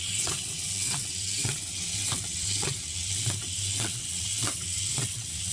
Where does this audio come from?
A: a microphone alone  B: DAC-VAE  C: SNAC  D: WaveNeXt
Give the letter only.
D